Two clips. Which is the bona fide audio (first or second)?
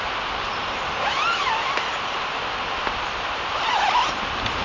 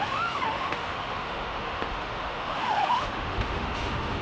first